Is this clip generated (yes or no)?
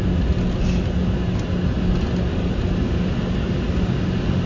no